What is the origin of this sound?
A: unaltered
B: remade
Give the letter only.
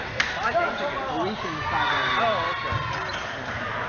A